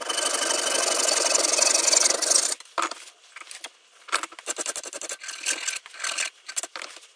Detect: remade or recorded recorded